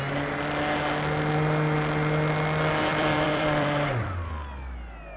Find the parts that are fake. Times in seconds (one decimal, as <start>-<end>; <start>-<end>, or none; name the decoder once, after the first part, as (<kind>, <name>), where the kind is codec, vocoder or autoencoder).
2.9-4.3 (vocoder, BigVGAN v2)